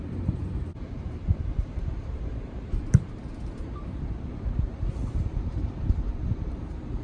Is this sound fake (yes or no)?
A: yes